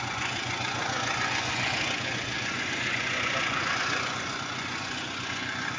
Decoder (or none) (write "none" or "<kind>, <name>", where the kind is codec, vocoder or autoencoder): vocoder, Vocos